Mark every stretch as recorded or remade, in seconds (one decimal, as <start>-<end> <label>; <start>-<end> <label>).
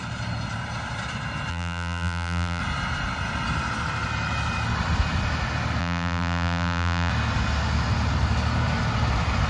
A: 0.0-1.5 recorded; 1.5-2.6 remade; 2.6-5.8 recorded; 5.8-7.1 remade; 7.1-9.5 recorded